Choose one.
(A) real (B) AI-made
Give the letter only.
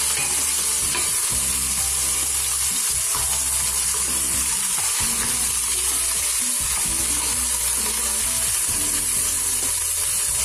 A